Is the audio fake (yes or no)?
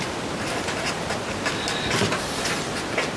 no